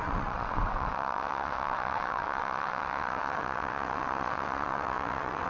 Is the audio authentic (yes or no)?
no